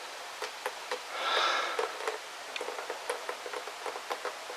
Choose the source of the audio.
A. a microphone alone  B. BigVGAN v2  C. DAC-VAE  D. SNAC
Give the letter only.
A